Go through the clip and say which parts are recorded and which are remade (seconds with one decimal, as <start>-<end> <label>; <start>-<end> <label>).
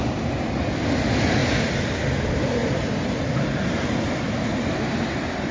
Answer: 0.0-5.5 recorded